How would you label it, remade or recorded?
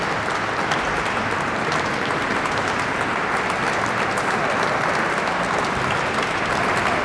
recorded